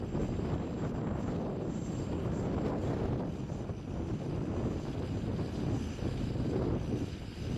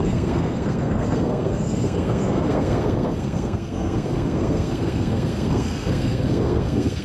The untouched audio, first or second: first